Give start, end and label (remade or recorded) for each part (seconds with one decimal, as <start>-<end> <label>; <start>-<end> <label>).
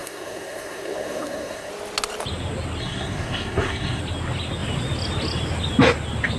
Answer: 0.0-1.7 remade; 1.7-2.8 recorded; 2.8-4.0 remade; 4.0-6.4 recorded